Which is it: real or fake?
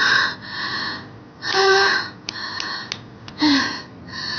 real